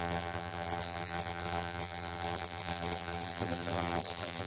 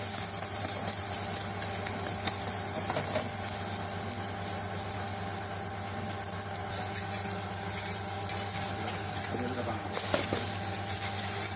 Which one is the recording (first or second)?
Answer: second